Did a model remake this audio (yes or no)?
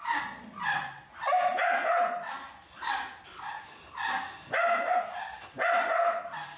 no